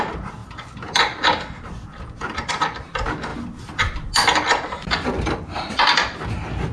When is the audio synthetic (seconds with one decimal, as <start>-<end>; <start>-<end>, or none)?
none